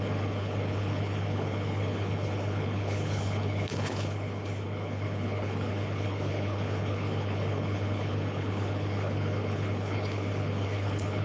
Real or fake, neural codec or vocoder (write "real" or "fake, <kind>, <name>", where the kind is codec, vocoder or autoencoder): fake, codec, HILCodec